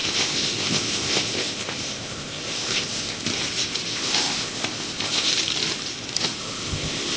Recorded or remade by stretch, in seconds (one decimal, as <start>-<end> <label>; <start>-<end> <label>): 0.0-3.3 remade; 3.3-3.9 recorded; 3.9-5.3 remade; 5.3-6.4 recorded; 6.4-7.2 remade